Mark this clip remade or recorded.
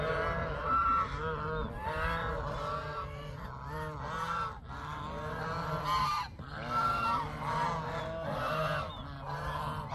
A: recorded